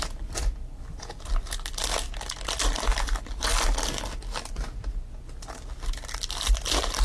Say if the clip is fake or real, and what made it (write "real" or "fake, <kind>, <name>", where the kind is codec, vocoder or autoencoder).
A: real